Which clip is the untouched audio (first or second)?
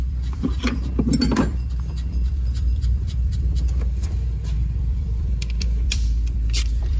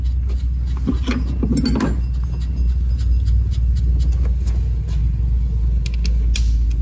second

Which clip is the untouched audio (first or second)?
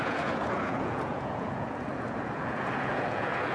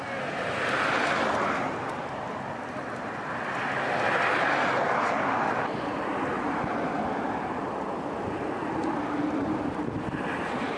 second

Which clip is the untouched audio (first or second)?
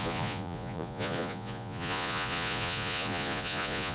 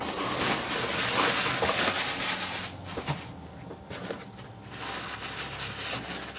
second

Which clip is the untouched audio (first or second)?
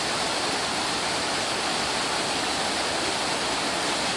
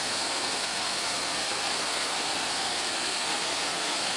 first